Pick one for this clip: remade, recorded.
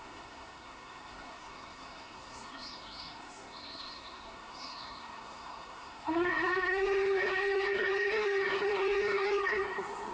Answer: remade